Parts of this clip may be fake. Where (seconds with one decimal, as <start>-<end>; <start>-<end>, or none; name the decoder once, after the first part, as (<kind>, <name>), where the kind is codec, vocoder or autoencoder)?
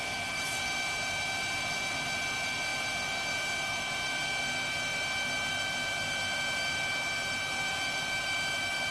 none